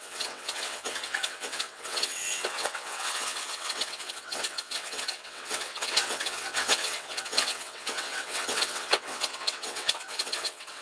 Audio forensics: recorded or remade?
remade